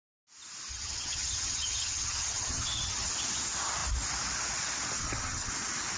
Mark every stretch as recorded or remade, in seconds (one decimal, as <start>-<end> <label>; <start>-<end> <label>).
0.0-0.7 recorded; 0.7-3.1 remade; 3.1-5.0 recorded; 5.0-5.5 remade; 5.5-6.0 recorded